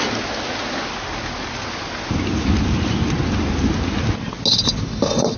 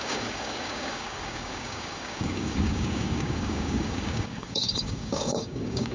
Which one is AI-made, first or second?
second